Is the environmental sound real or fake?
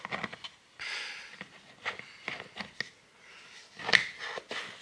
real